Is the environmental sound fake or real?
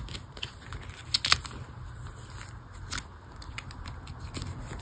real